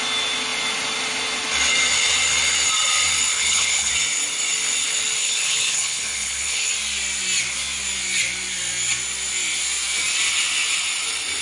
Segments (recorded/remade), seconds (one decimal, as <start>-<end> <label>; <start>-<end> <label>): 0.0-3.3 recorded; 3.3-3.9 remade; 3.9-5.2 recorded; 5.2-6.7 remade; 6.7-11.4 recorded